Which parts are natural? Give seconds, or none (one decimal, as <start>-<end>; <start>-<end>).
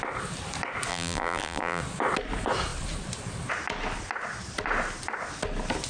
0.0-0.9; 1.8-5.9